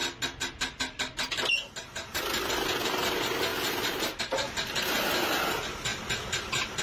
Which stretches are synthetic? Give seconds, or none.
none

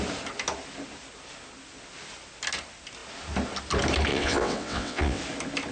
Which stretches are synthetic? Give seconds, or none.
4.1-5.2 (vocoder, WaveNeXt)

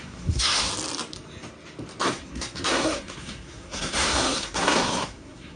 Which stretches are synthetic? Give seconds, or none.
0.0-0.7 (codec, SNAC); 2.0-5.6